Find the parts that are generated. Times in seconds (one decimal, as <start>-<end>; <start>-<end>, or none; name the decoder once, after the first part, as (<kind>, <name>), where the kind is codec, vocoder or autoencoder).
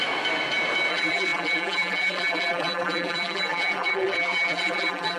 0.9-5.2 (vocoder, BigVGAN v2)